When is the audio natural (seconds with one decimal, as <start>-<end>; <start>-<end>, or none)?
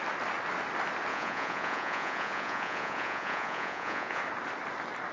0.0-1.1; 4.2-5.1